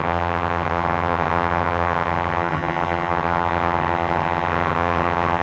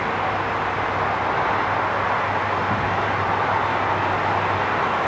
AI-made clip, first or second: first